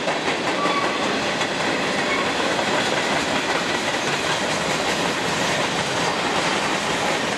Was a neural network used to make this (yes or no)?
yes